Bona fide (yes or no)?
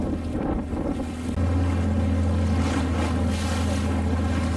yes